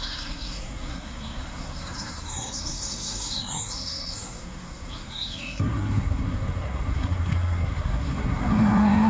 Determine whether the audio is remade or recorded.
remade